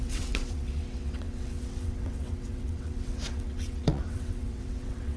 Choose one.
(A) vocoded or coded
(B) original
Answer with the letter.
A